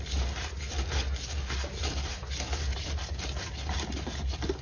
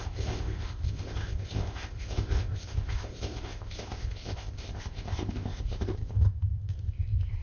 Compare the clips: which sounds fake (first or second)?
second